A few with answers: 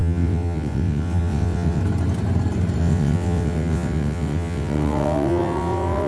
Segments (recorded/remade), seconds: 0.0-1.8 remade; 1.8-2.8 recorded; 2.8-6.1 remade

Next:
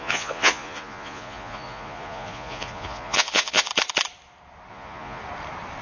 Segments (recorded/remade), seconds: 0.0-3.7 remade; 3.7-4.7 recorded; 4.7-5.2 remade; 5.2-5.8 recorded

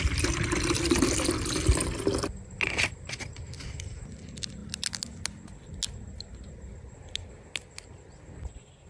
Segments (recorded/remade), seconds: 0.0-8.9 recorded

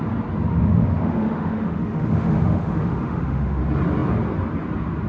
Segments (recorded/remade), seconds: 0.0-0.5 recorded; 0.5-3.6 remade; 3.6-5.1 recorded

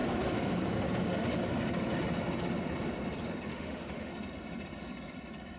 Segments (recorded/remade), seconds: 0.0-3.5 recorded; 3.5-4.1 remade; 4.1-5.6 recorded